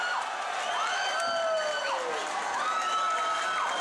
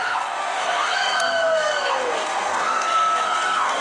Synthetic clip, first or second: second